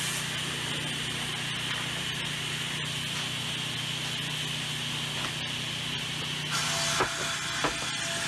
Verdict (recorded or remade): recorded